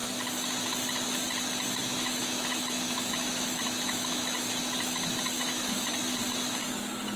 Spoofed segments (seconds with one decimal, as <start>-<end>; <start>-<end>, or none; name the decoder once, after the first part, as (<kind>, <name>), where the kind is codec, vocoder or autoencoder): 1.8-5.9 (autoencoder, DAC-VAE)